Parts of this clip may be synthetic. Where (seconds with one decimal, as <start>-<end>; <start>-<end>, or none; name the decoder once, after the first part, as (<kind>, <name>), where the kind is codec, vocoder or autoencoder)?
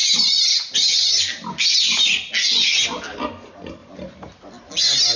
none